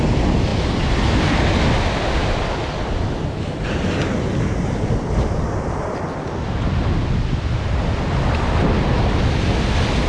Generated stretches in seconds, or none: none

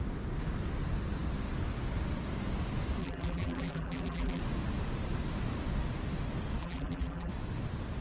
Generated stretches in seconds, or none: 3.0-4.4 (vocoder, BigVGAN v2); 6.6-7.3